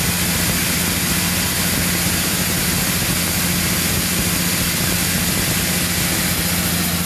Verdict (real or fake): real